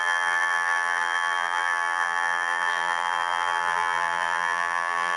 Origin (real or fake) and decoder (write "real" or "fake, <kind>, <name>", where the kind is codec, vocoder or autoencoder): fake, vocoder, BigVGAN v2